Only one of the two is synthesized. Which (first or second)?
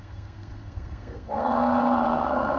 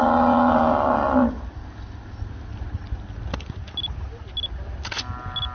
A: first